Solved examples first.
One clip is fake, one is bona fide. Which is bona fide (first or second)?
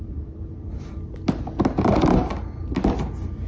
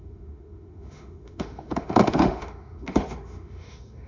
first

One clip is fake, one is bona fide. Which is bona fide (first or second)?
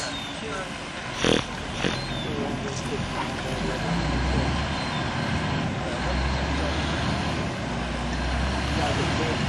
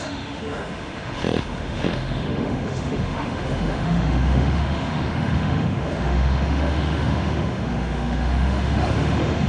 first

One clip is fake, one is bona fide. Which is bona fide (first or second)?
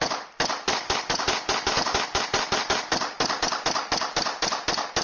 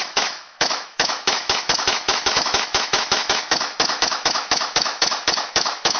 first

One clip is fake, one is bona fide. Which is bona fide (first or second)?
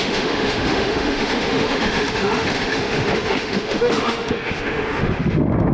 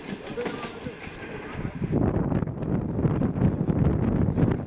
second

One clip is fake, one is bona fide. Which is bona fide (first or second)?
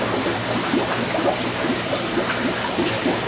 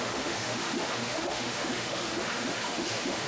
first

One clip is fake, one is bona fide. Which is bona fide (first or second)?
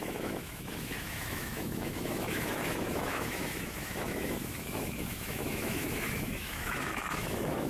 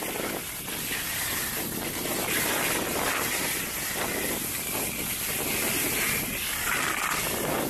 second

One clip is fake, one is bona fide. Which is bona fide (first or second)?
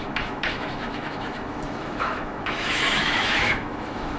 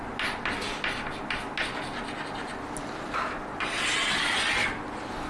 second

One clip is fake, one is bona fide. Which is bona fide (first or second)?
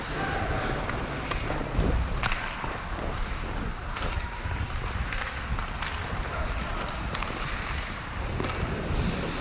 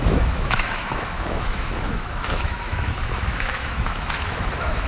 first